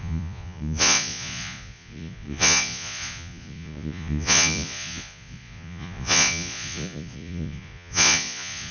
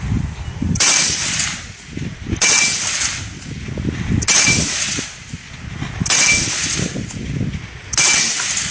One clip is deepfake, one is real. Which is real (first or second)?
second